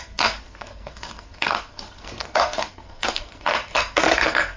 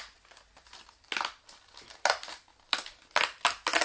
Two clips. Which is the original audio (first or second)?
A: second